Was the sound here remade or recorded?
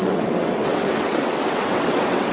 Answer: remade